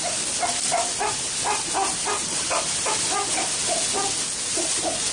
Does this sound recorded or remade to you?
recorded